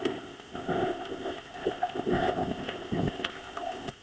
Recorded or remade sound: remade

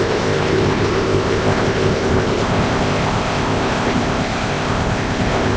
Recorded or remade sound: remade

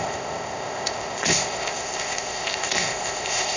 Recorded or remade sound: remade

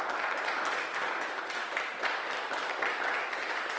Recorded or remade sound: recorded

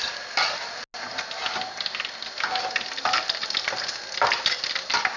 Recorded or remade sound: recorded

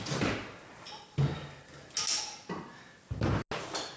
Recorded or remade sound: recorded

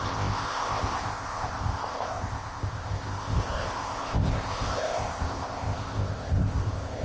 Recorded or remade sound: remade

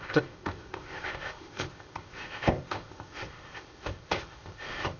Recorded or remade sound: remade